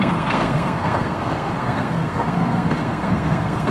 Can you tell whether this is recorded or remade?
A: remade